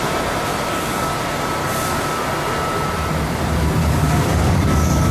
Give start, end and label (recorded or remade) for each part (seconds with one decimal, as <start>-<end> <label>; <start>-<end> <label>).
0.0-0.5 recorded; 0.5-1.1 remade; 1.1-1.6 recorded; 1.6-2.3 remade; 2.3-3.8 recorded; 3.8-5.1 remade